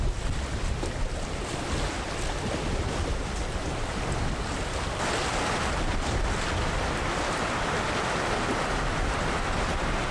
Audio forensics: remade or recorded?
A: recorded